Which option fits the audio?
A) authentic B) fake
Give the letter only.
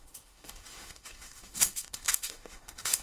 B